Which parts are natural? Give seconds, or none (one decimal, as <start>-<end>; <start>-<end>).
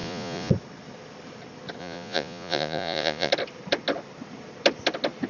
0.5-1.8; 3.3-5.3